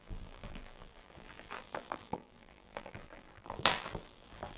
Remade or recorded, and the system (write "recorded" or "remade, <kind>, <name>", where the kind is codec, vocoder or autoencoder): remade, vocoder, BigVGAN v2